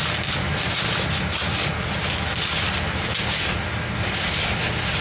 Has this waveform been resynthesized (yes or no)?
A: no